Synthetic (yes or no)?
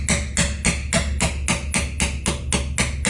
no